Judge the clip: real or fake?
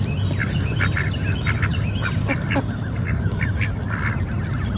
real